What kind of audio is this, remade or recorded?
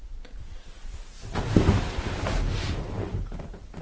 recorded